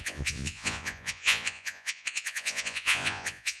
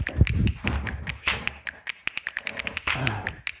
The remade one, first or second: first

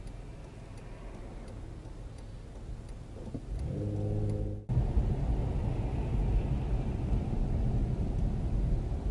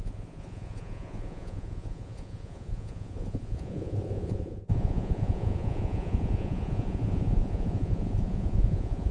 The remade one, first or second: second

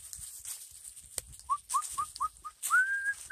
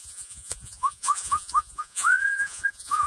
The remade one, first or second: second